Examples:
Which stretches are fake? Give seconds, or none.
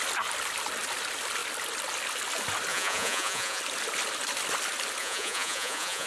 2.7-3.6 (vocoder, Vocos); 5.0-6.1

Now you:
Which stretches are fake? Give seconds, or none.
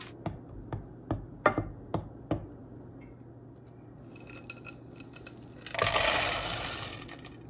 none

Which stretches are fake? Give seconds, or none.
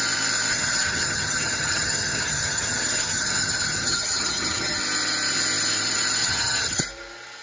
0.5-4.8 (vocoder, HiFi-GAN); 6.2-6.8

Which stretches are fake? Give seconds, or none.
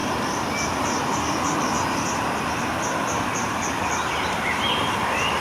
none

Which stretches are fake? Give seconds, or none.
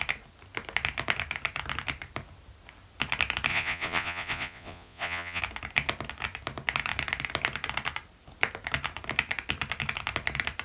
3.5-5.4 (vocoder, Vocos)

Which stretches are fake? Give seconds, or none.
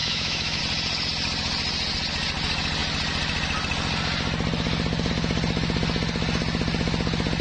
0.0-0.6 (autoencoder, DAC-VAE)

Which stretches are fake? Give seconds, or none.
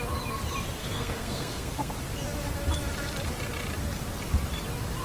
0.8-1.9 (codec, SNAC)